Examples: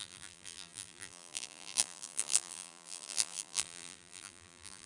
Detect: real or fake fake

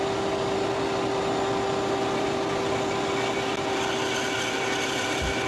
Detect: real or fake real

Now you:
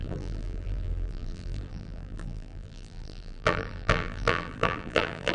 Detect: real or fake fake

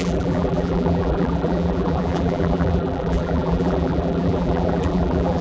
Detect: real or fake fake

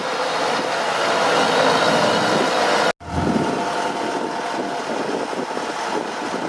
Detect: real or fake real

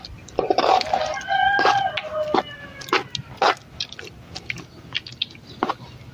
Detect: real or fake real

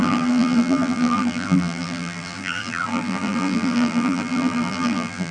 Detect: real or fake fake